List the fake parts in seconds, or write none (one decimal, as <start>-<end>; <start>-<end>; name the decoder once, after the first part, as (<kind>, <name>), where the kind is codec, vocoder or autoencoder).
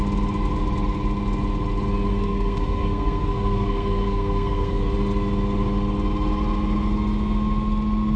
2.1-4.9 (codec, SNAC)